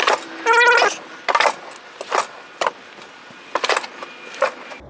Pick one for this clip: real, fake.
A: real